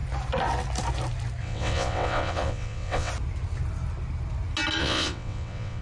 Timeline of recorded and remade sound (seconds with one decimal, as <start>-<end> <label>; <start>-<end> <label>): 0.0-1.4 recorded; 1.4-3.1 remade; 3.1-4.8 recorded; 4.8-5.8 remade